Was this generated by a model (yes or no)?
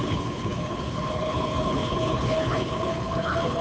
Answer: yes